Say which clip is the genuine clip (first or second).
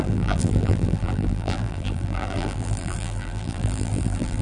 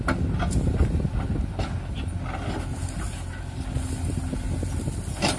second